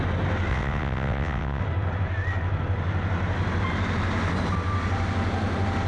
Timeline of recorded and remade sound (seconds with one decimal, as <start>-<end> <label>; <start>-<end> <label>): 0.0-0.5 recorded; 0.5-1.6 remade; 1.6-5.9 recorded